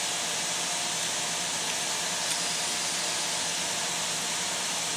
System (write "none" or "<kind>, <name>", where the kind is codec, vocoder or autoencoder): none